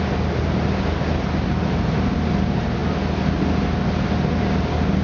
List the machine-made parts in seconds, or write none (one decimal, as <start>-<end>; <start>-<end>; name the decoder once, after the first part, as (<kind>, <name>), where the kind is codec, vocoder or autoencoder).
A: none

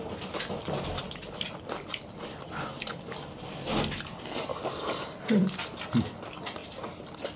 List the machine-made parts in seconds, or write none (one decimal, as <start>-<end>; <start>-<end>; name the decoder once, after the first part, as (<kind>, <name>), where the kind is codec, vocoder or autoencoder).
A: none

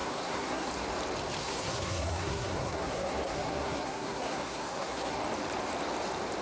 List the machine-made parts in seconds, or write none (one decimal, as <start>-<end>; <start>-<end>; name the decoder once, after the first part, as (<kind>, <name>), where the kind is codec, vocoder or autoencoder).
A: 0.0-0.7 (codec, SNAC); 1.4-5.2

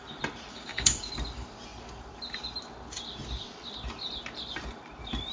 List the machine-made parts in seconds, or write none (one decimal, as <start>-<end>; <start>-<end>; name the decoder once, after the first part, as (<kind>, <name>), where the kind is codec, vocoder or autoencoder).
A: 0.5-1.1 (codec, DAC)

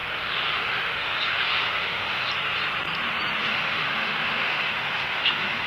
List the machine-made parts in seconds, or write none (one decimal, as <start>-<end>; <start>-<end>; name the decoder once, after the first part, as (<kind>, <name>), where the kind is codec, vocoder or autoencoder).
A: 0.0-2.3 (autoencoder, DAC-VAE); 3.4-5.7

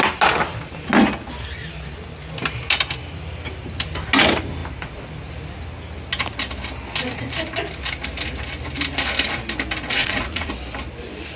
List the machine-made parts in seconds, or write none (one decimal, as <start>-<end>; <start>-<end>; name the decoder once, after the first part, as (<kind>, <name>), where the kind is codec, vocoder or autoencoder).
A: 10.0-10.5 (vocoder, Vocos)

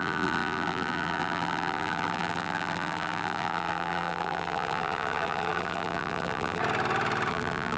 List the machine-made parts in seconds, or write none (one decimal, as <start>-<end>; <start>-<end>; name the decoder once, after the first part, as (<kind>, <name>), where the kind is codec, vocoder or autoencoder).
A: 0.0-6.6 (vocoder, BigVGAN v2); 7.3-7.8